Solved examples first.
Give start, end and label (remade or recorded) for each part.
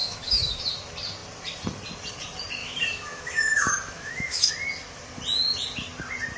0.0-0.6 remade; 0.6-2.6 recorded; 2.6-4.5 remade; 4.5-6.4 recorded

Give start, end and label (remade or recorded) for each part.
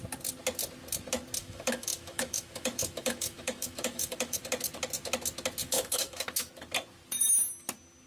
0.0-1.4 recorded; 1.4-4.4 remade; 4.4-5.6 recorded; 5.6-6.5 remade; 6.5-8.1 recorded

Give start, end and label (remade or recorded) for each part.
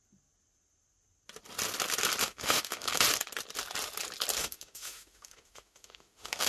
0.0-2.2 recorded; 2.2-3.0 remade; 3.0-4.4 recorded; 4.4-6.5 remade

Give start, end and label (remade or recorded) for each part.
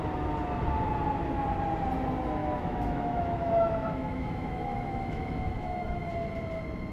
0.0-2.4 recorded; 2.4-6.1 remade; 6.1-6.9 recorded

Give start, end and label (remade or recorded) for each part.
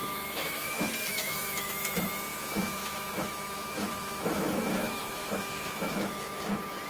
0.0-0.7 remade; 0.7-1.1 recorded; 1.1-1.7 remade; 1.7-2.3 recorded; 2.3-6.4 remade; 6.4-6.9 recorded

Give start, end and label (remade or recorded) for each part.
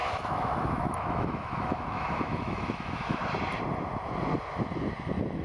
0.0-3.2 remade; 3.2-5.4 recorded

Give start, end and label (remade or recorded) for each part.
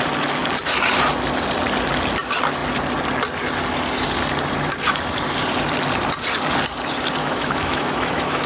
0.0-7.2 recorded; 7.2-8.5 remade